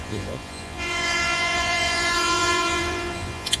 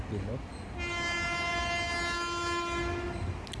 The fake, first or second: first